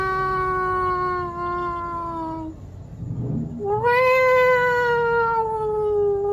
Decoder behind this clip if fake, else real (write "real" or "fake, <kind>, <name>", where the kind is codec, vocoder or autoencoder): real